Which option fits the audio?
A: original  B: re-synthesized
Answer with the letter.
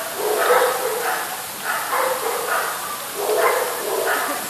A